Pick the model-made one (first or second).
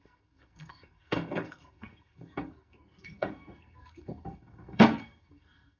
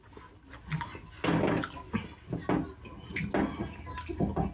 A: first